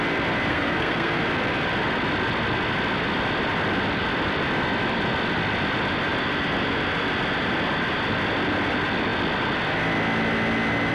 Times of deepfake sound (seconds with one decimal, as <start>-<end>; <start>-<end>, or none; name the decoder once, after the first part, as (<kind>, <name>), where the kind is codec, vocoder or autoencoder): 0.5-1.2 (codec, SNAC)